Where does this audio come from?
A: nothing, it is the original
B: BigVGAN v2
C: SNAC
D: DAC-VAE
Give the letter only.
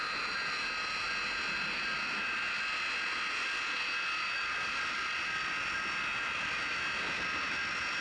A